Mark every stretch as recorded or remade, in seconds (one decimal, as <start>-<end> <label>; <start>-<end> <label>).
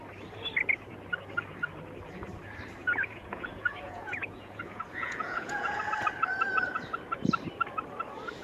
0.0-2.8 recorded; 2.8-5.8 remade; 5.8-8.4 recorded